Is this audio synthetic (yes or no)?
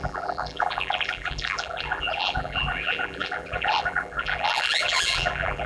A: yes